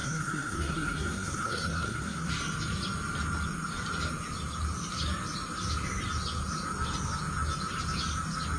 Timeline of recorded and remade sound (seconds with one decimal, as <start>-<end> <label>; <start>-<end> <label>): 0.0-2.3 remade; 2.3-8.6 recorded